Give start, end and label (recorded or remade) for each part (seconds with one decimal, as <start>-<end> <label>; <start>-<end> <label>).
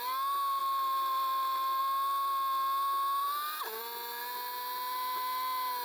0.0-0.6 recorded; 0.6-1.8 remade; 1.8-3.2 recorded; 3.2-3.8 remade; 3.8-5.8 recorded